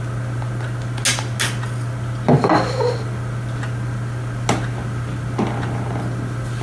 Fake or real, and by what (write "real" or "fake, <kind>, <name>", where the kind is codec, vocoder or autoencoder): real